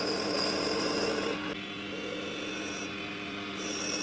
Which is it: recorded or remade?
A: recorded